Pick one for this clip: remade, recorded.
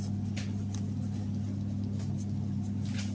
recorded